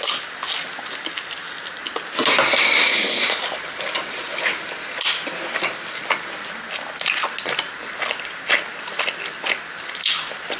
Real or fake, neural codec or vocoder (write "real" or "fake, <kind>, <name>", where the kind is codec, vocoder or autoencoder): real